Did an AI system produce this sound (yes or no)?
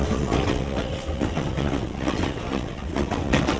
yes